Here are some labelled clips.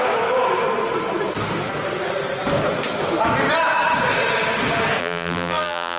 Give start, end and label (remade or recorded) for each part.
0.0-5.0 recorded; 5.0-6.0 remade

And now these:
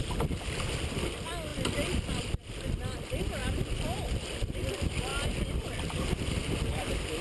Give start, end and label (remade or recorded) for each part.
0.0-7.2 recorded

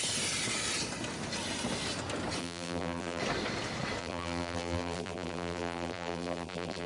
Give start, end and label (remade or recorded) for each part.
0.0-2.4 recorded; 2.4-3.2 remade; 3.2-4.0 recorded; 4.0-6.9 remade

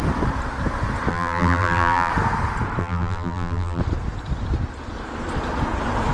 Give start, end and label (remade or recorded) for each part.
0.0-1.1 recorded; 1.1-2.1 remade; 2.1-2.8 recorded; 2.8-3.8 remade; 3.8-6.1 recorded

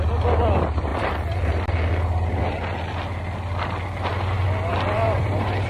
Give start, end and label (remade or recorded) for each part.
0.0-0.9 recorded; 0.9-2.4 remade; 2.4-4.7 recorded; 4.7-5.7 remade

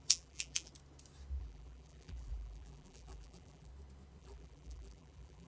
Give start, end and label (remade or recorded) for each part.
0.0-0.7 remade; 0.7-1.4 recorded; 1.4-3.7 remade; 3.7-4.2 recorded; 4.2-5.5 remade

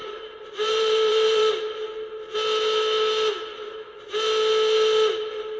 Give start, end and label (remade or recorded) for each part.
0.0-1.8 remade; 1.8-5.1 recorded; 5.1-5.6 remade

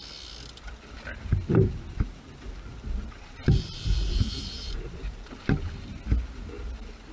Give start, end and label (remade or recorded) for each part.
0.0-2.7 recorded; 2.7-6.0 remade; 6.0-7.1 recorded